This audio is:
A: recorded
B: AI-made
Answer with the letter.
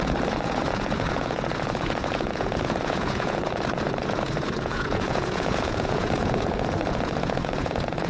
B